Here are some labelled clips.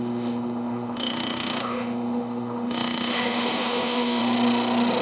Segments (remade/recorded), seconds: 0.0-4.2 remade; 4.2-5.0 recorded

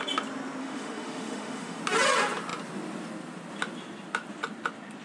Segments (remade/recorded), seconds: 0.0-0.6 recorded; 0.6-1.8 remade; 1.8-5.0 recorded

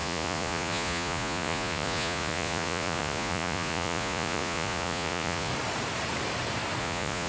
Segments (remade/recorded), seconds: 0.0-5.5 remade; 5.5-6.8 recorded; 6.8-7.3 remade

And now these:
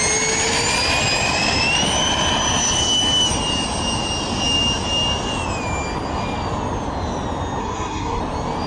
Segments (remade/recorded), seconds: 0.0-7.6 recorded; 7.6-8.2 remade; 8.2-8.7 recorded

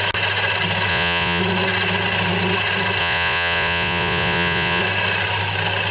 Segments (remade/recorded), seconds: 0.0-0.9 recorded; 0.9-1.4 remade; 1.4-3.0 recorded; 3.0-4.8 remade; 4.8-5.9 recorded

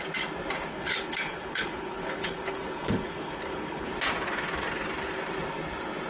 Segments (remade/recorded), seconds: 0.0-0.7 recorded; 0.7-3.9 remade; 3.9-6.1 recorded